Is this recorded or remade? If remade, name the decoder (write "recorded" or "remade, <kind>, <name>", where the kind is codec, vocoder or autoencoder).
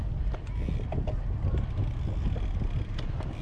recorded